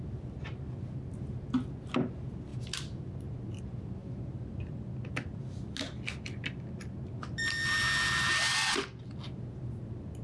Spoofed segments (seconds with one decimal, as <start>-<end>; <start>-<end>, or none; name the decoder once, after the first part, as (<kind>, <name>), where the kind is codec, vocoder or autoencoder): 4.0-4.9 (vocoder, BigVGAN v2)